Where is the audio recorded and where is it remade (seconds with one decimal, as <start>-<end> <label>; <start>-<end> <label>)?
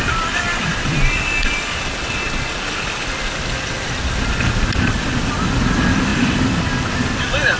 0.0-6.1 recorded; 6.1-6.7 remade; 6.7-7.6 recorded